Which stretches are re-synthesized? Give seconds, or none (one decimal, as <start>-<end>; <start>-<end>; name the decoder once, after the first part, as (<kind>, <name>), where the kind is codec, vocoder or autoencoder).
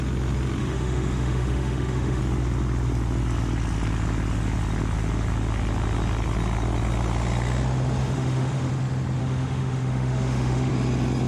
0.6-2.2 (autoencoder, DAC-VAE); 8.0-8.7; 9.2-10.7